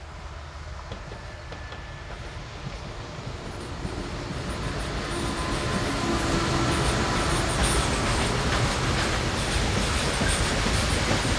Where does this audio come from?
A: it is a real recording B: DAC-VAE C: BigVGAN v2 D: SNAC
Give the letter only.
A